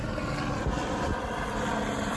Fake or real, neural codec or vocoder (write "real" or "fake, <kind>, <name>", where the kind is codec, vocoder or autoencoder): real